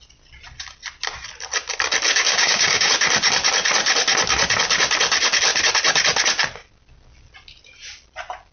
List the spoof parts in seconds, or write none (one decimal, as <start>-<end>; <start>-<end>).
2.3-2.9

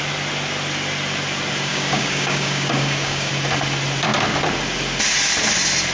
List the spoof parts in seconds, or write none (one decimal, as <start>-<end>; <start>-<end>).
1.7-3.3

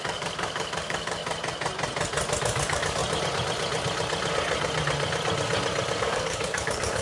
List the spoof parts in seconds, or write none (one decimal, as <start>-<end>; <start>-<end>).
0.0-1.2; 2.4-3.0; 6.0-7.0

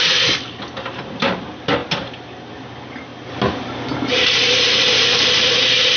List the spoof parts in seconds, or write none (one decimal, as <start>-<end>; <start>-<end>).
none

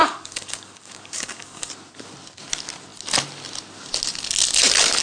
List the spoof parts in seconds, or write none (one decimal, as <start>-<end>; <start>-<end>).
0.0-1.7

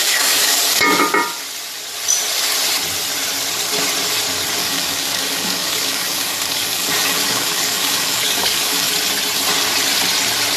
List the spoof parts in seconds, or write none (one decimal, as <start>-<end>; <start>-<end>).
0.0-1.0; 4.6-8.9

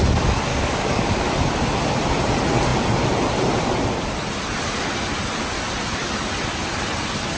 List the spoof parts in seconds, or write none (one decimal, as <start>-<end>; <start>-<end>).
0.5-1.3